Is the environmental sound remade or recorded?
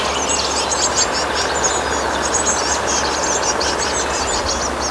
recorded